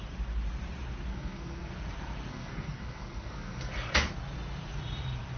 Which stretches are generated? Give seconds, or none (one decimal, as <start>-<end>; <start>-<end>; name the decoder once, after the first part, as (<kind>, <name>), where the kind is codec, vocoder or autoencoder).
1.1-1.7 (codec, SNAC); 2.3-3.7